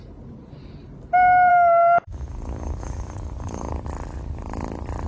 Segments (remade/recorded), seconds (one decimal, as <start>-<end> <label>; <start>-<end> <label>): 0.0-1.5 recorded; 1.5-3.7 remade; 3.7-5.1 recorded